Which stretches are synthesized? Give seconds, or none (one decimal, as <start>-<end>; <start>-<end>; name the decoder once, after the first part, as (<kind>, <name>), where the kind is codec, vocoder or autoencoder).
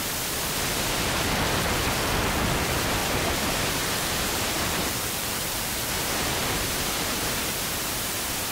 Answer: 3.0-5.9 (vocoder, BigVGAN v2); 6.4-7.8